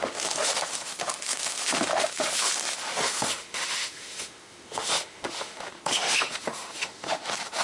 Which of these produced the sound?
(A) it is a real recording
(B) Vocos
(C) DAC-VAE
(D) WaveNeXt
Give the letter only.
C